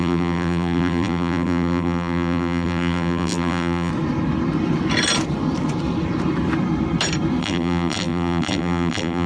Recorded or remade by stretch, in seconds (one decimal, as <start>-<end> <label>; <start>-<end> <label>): 0.0-3.9 remade; 3.9-7.4 recorded; 7.4-9.3 remade